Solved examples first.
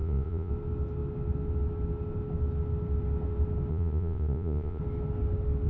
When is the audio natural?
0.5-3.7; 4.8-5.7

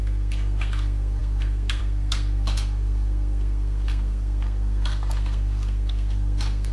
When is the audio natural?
none

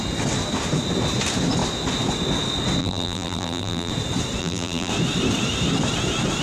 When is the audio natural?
0.0-2.8; 3.9-4.4; 4.9-6.4

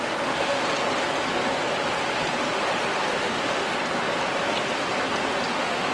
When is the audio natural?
0.6-3.2; 3.7-5.5

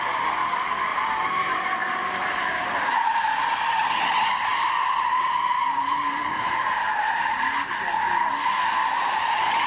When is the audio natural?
0.0-0.9; 3.5-4.5; 7.3-8.8